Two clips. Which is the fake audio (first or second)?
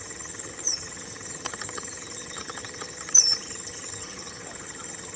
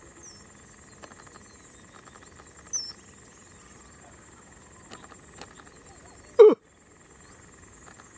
first